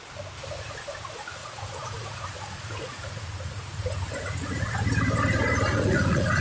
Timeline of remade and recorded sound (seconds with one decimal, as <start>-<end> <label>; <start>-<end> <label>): 0.0-1.4 recorded; 1.4-4.7 remade; 4.7-5.7 recorded; 5.7-6.4 remade